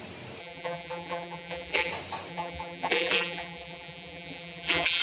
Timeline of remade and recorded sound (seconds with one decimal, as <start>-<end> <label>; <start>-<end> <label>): 0.0-0.4 recorded; 0.4-1.9 remade; 1.9-2.3 recorded; 2.3-5.0 remade